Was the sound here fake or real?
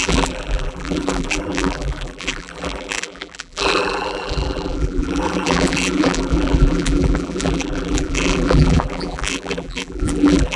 fake